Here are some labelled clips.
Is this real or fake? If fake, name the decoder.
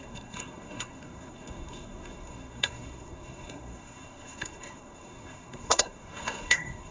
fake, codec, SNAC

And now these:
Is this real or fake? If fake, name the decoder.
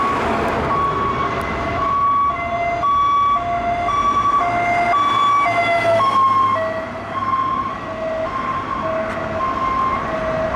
real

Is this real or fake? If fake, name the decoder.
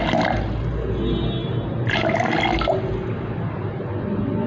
real